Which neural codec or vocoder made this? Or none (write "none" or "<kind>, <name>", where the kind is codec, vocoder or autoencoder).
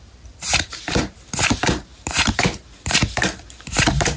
vocoder, BigVGAN v2